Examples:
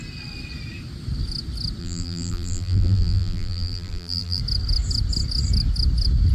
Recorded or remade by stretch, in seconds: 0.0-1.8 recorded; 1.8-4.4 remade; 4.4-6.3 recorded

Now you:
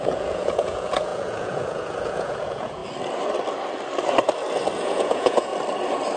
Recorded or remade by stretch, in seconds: 0.0-2.8 remade; 2.8-4.8 recorded; 4.8-5.5 remade; 5.5-6.2 recorded

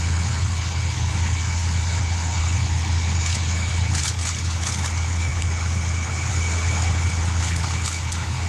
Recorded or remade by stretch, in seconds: 0.0-8.5 remade

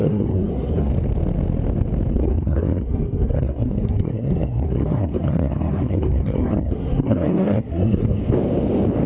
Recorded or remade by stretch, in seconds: 0.0-0.9 remade; 0.9-2.1 recorded; 2.1-8.2 remade; 8.2-9.1 recorded

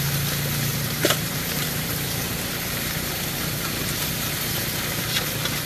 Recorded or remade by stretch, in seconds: 0.0-0.7 recorded; 0.7-4.1 remade; 4.1-5.7 recorded

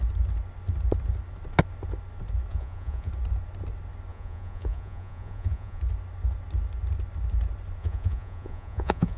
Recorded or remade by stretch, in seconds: 0.0-2.5 recorded; 2.5-3.1 remade; 3.1-4.1 recorded; 4.1-5.8 remade; 5.8-7.8 recorded; 7.8-9.2 remade